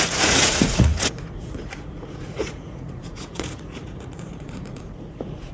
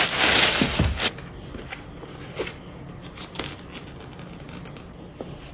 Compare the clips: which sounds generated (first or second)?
first